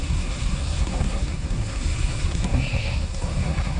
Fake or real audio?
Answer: fake